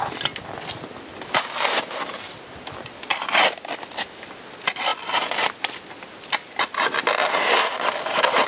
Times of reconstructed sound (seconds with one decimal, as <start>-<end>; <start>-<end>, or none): none